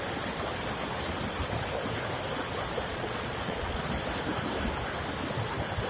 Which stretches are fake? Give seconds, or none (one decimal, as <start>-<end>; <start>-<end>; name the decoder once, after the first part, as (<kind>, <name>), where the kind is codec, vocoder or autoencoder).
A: 2.9-3.8 (vocoder, Vocos)